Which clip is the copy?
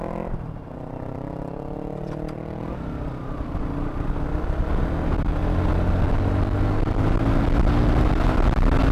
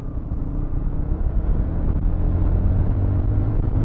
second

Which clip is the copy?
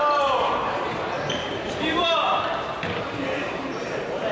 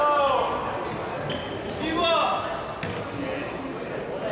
first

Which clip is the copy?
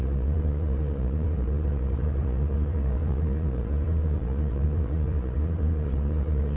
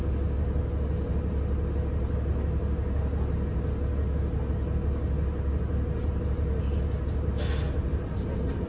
first